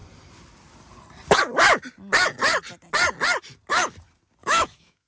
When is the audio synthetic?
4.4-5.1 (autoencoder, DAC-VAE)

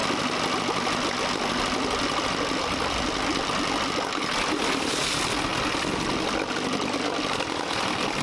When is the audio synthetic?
none

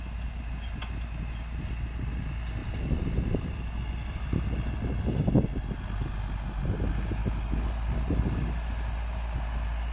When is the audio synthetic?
2.6-4.2 (vocoder, BigVGAN v2)